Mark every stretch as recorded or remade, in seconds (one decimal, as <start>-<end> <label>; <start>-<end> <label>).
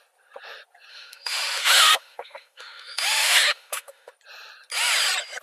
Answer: 0.0-0.9 recorded; 0.9-4.1 remade; 4.1-5.4 recorded